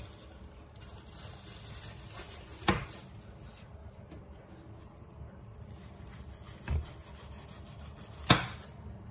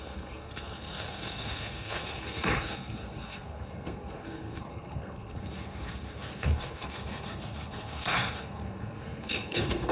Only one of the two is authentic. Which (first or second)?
first